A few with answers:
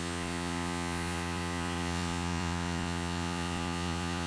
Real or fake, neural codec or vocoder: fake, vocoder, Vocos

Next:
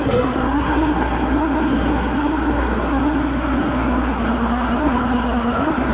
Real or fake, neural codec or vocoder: fake, codec, SNAC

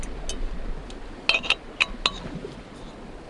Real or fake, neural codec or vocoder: real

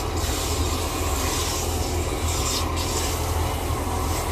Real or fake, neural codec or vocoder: real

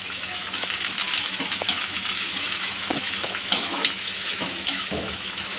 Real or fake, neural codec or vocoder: fake, autoencoder, DAC-VAE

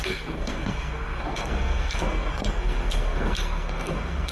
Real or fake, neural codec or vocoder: fake, codec, SNAC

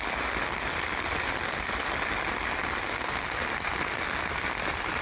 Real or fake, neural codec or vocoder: real